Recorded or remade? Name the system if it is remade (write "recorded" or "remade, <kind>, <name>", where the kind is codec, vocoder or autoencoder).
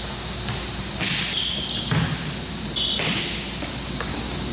recorded